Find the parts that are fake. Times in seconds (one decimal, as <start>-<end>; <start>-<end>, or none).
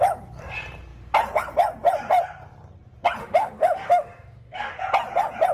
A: 3.2-4.8